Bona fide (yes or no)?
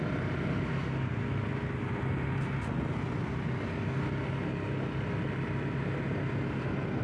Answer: yes